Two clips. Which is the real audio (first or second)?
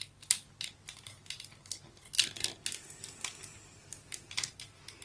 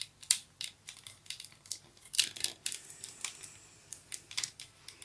first